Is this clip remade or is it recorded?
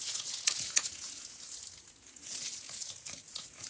remade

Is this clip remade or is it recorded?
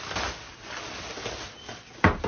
recorded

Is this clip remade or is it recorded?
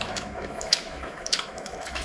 remade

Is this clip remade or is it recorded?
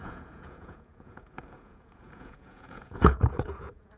remade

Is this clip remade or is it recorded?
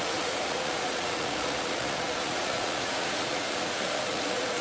remade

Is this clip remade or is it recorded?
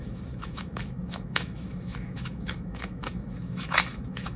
remade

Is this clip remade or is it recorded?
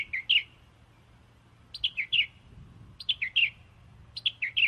recorded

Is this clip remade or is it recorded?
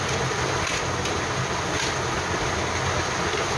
recorded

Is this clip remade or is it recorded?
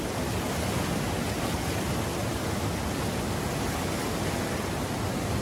recorded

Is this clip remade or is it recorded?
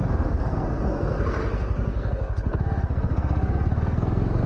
remade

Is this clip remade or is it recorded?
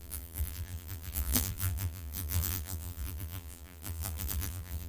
remade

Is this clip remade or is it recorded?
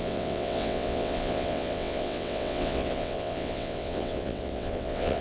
remade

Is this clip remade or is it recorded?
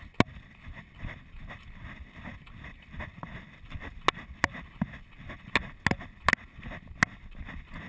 recorded